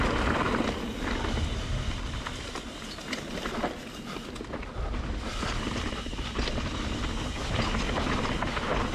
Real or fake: real